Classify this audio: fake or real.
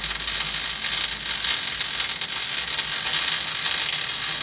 real